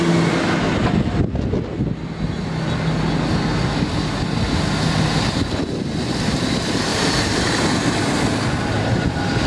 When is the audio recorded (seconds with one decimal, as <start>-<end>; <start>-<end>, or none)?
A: 0.0-9.5